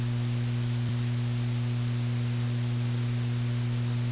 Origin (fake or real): real